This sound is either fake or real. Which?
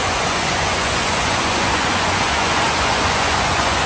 fake